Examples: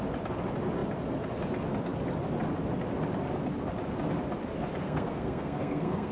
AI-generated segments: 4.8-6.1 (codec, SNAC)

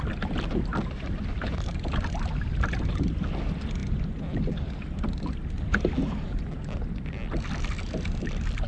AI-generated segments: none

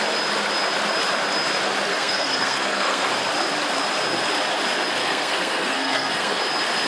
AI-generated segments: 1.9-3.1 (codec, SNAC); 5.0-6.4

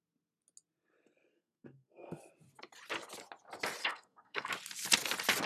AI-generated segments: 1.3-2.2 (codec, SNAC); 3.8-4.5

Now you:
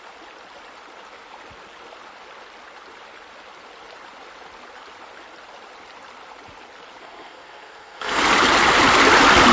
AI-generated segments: 7.0-8.2 (codec, SNAC)